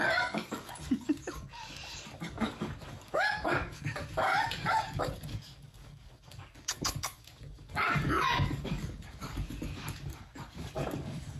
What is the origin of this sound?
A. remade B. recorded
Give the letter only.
A